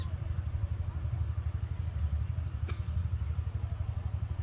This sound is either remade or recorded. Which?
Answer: recorded